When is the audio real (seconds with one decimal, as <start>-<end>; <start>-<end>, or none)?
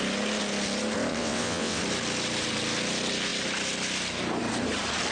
0.0-1.1; 1.8-5.1